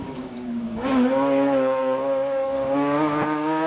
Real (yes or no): no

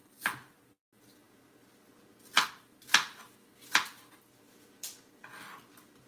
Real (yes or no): yes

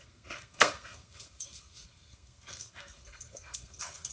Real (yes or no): no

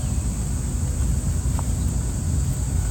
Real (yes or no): yes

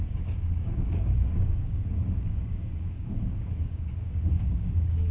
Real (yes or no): no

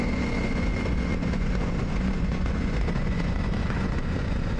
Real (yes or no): no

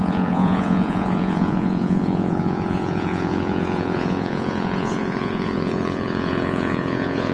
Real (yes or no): no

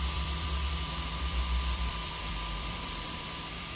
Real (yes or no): no